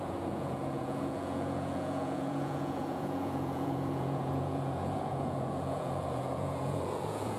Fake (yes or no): yes